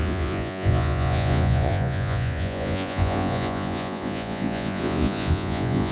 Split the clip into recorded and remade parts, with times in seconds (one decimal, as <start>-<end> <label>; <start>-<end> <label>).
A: 0.0-5.9 remade